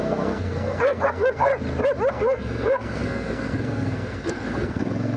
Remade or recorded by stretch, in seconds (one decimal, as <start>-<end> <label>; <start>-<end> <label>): 0.0-1.5 remade; 1.5-2.1 recorded; 2.1-5.2 remade